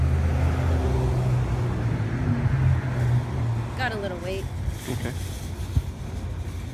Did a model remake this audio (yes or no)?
no